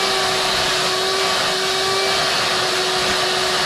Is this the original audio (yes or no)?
yes